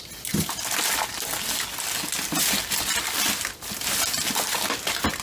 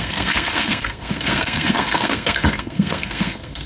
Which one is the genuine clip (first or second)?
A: first